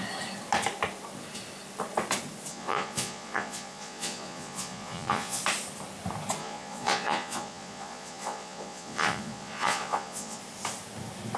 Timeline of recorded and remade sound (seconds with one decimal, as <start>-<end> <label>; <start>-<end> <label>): 0.0-2.5 recorded; 2.5-5.4 remade; 5.4-6.4 recorded; 6.4-10.4 remade; 10.4-11.4 recorded